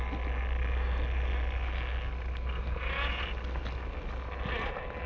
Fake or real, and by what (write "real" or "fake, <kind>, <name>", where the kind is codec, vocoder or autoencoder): real